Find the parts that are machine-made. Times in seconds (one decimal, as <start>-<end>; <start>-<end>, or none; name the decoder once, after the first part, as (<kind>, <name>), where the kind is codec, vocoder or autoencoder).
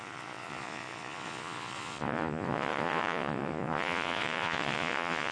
0.0-5.3 (vocoder, Vocos)